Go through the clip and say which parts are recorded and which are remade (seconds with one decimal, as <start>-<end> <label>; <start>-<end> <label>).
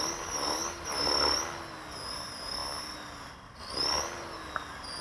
0.0-5.0 recorded